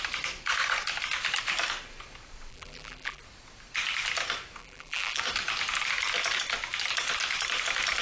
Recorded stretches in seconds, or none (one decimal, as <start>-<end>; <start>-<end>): 0.0-2.5; 3.2-4.6; 5.2-8.0